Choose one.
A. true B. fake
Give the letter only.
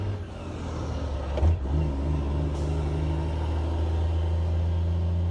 A